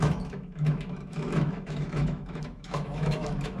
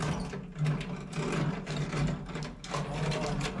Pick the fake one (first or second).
first